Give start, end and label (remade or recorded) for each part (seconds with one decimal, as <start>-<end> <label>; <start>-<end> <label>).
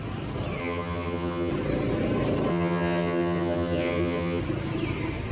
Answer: 0.0-0.6 recorded; 0.6-1.5 remade; 1.5-2.5 recorded; 2.5-4.4 remade; 4.4-5.3 recorded